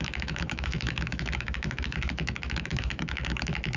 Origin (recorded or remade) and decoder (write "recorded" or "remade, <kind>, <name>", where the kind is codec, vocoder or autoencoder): remade, autoencoder, DAC-VAE